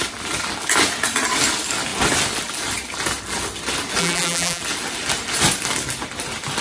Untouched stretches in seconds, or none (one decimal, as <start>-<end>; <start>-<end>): 0.0-4.0; 4.6-6.6